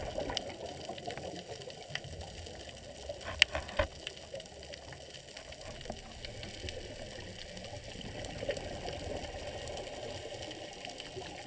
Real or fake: real